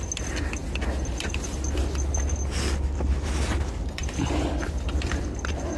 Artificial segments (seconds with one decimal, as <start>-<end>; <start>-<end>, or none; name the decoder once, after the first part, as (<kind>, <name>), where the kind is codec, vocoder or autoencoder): none